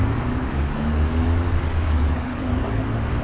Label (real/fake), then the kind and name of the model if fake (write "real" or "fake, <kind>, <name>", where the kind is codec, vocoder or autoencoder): fake, codec, DAC